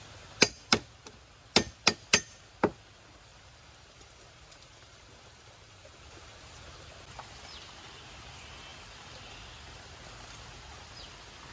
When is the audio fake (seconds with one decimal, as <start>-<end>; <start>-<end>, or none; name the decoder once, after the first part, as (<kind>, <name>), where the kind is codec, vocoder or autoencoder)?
3.3-6.8 (vocoder, BigVGAN v2)